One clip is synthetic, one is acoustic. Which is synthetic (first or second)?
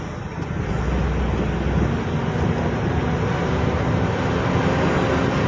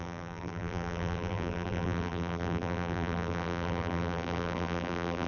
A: second